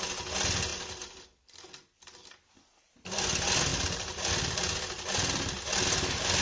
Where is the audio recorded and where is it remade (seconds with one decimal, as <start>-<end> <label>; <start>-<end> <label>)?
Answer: 0.0-6.4 recorded